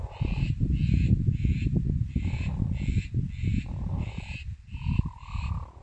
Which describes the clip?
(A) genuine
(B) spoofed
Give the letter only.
A